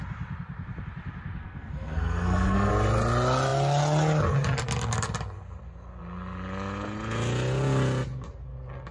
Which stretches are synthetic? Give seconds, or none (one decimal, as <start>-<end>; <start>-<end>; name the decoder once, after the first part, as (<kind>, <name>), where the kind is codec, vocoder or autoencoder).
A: 1.4-2.7 (codec, SNAC)